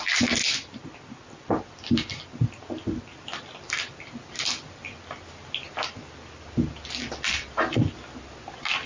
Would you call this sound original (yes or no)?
yes